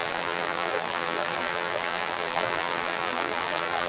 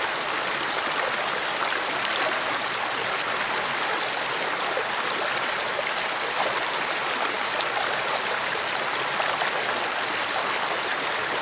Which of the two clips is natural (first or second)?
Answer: second